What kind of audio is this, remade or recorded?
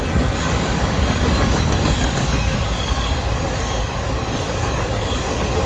remade